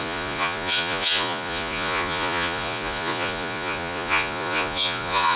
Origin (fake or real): fake